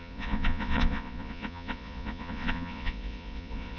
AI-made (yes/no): yes